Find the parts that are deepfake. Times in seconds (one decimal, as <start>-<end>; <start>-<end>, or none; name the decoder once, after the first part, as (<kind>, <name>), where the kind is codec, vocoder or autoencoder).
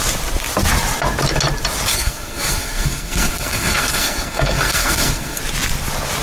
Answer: 1.9-5.4 (codec, SNAC)